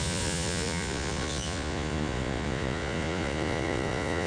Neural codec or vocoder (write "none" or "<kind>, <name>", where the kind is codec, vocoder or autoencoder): vocoder, Vocos